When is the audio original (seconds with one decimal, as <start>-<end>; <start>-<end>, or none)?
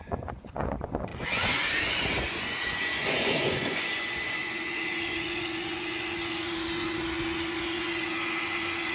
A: none